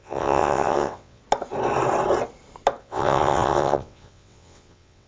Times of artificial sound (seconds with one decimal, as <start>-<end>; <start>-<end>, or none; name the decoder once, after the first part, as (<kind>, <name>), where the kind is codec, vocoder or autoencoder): 0.0-1.2 (vocoder, WaveNeXt); 2.8-5.1